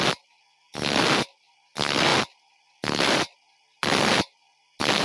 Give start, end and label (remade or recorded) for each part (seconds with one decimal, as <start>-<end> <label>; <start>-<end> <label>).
0.0-5.0 recorded